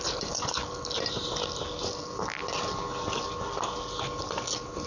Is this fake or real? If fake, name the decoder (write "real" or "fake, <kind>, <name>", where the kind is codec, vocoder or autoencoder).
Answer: real